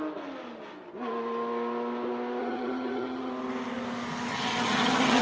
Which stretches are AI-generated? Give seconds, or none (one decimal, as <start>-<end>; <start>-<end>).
2.4-3.3; 4.3-5.2